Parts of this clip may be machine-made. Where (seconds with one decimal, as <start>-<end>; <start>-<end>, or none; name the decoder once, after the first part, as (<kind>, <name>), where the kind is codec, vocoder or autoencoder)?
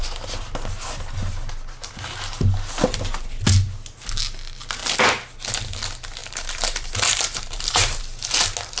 6.2-8.0 (vocoder, BigVGAN v2)